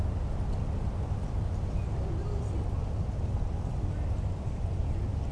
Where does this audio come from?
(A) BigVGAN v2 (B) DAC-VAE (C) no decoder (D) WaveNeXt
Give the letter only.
C